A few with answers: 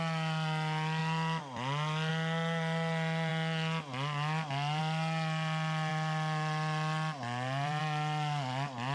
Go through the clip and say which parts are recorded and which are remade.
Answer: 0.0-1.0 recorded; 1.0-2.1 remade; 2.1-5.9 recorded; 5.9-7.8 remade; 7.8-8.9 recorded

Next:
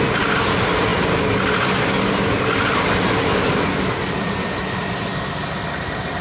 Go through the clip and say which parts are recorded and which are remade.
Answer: 0.0-6.2 recorded

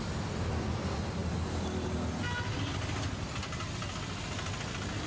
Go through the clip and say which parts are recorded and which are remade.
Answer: 0.0-5.1 recorded

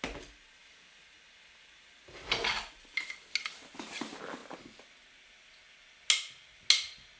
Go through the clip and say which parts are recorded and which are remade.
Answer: 0.0-7.2 recorded

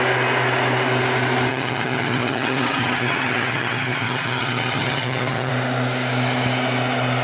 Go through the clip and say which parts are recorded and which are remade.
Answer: 0.0-1.5 recorded; 1.5-5.5 remade; 5.5-7.2 recorded

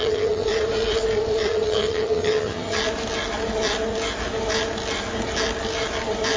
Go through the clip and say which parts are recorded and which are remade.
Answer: 0.0-0.5 remade; 0.5-1.5 recorded; 1.5-2.8 remade; 2.8-6.4 recorded

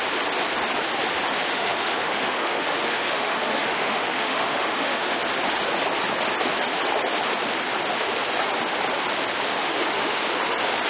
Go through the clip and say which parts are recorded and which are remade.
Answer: 0.0-1.5 recorded; 1.5-5.2 remade; 5.2-9.5 recorded; 9.5-10.2 remade; 10.2-10.9 recorded

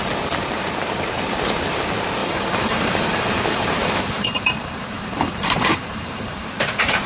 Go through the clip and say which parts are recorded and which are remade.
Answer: 0.0-2.2 recorded; 2.2-6.5 remade; 6.5-7.1 recorded